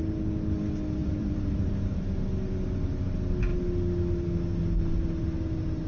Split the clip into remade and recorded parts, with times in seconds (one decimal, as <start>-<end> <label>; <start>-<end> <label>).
0.0-1.0 recorded; 1.0-1.7 remade; 1.7-5.9 recorded